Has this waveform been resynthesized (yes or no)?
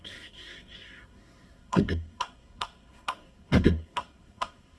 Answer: yes